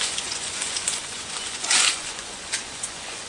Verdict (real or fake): fake